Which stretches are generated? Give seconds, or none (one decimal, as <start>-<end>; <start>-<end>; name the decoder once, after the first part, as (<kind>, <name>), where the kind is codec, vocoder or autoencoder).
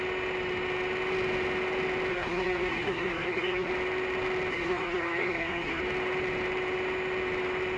2.1-3.7 (codec, SNAC); 4.5-5.8